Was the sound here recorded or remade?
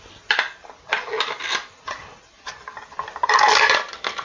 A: recorded